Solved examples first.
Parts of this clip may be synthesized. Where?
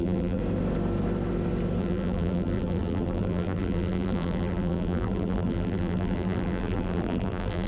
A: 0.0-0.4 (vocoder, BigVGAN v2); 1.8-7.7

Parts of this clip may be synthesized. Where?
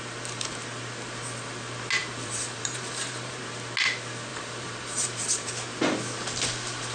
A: 2.0-3.4 (vocoder, BigVGAN v2); 4.3-5.5